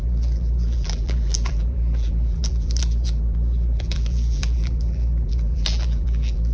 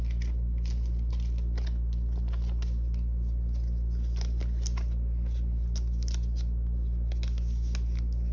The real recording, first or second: second